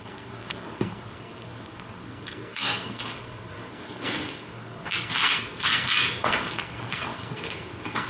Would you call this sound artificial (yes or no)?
yes